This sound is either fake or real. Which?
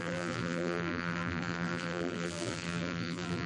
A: fake